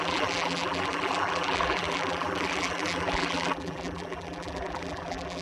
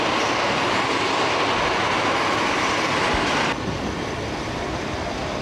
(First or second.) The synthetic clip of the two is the first